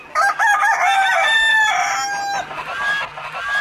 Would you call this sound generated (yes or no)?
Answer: no